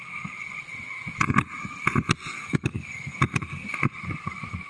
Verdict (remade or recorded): recorded